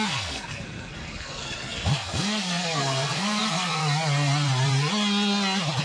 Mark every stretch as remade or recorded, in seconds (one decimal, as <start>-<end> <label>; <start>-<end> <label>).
0.0-3.8 remade; 3.8-5.8 recorded